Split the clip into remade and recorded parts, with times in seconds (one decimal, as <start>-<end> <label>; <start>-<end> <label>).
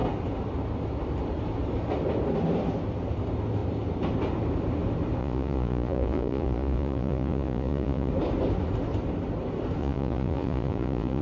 0.0-5.2 recorded; 5.2-8.1 remade; 8.1-9.8 recorded; 9.8-11.2 remade